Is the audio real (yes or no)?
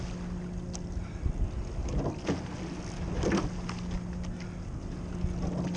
yes